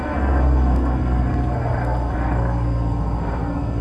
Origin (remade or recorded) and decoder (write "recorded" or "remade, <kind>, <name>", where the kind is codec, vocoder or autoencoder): remade, codec, SNAC